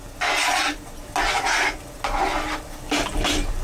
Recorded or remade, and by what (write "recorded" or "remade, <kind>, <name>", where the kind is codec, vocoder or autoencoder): recorded